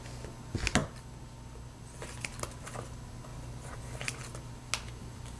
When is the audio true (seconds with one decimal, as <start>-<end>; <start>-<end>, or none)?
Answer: 0.0-3.3; 3.8-5.4